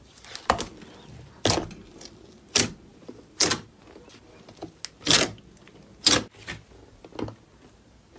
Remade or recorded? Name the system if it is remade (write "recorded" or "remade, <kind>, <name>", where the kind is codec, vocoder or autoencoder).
recorded